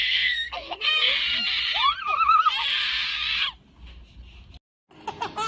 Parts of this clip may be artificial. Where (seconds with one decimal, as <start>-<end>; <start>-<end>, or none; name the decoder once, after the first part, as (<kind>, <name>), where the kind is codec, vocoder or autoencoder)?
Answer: 0.0-1.1 (codec, SNAC)